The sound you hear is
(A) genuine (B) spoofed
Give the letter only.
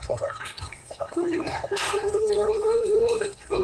B